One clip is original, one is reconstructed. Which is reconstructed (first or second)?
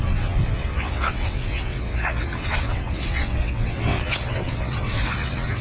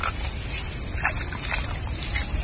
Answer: first